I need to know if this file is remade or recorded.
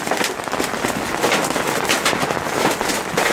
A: recorded